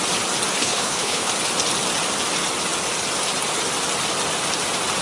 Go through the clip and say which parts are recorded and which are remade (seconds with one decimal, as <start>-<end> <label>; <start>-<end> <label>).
0.0-0.6 recorded; 0.6-1.3 remade; 1.3-5.0 recorded